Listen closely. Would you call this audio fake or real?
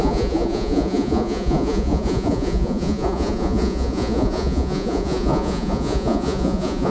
fake